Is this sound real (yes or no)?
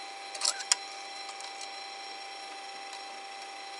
yes